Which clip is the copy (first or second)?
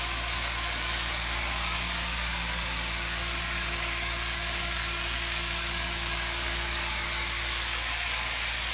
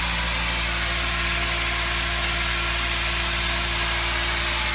first